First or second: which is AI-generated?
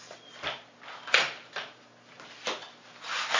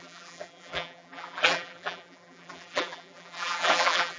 second